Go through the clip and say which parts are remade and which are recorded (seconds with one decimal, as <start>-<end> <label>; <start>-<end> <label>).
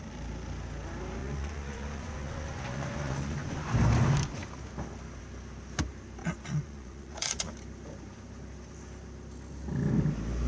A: 0.0-1.2 recorded; 1.2-3.7 remade; 3.7-6.2 recorded; 6.2-7.5 remade; 7.5-10.5 recorded